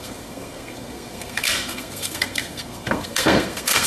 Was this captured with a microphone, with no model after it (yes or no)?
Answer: no